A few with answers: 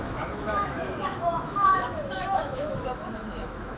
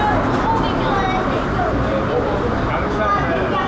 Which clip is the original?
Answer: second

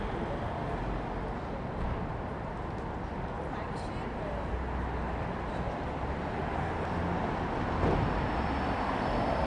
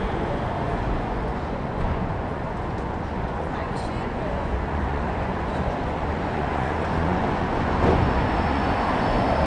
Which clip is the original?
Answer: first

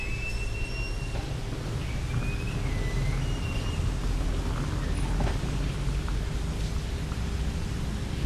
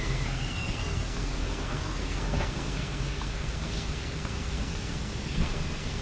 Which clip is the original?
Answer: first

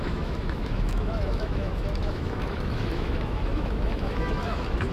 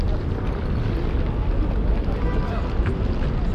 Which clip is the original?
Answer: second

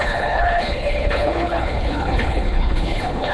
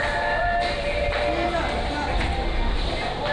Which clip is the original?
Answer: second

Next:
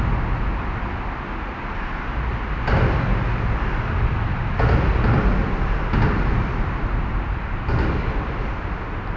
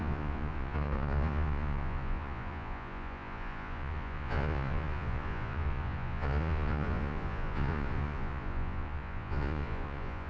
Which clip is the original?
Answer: first